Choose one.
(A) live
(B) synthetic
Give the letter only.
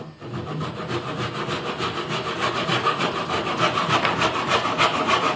A